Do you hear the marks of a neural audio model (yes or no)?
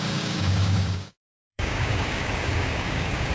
yes